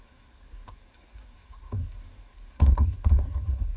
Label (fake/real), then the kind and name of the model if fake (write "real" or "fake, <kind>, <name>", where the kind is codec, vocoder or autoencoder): fake, codec, SNAC